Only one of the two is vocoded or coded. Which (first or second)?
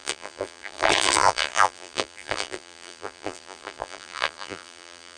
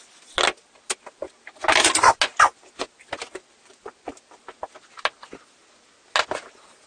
first